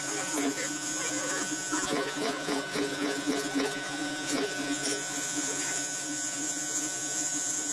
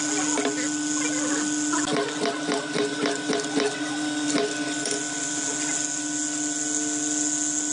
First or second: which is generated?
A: first